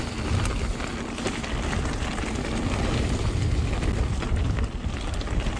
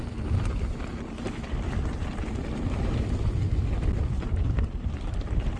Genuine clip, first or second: first